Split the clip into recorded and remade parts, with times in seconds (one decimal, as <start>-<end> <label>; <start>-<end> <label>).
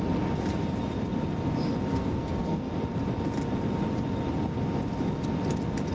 0.0-1.9 recorded; 1.9-2.7 remade; 2.7-5.9 recorded